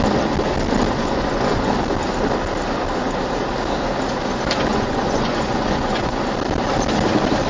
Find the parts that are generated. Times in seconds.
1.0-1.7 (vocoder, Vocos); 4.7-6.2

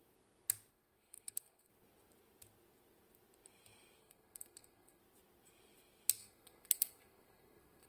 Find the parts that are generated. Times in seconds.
0.7-1.7 (codec, SNAC); 4.0-5.0; 6.2-7.9

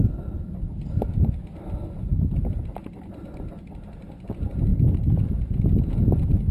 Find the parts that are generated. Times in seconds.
none

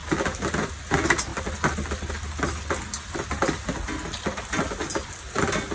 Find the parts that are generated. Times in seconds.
none